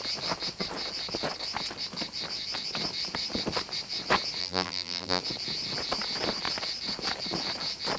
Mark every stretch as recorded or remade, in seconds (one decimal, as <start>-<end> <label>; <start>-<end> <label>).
0.0-4.4 recorded; 4.4-5.2 remade; 5.2-8.0 recorded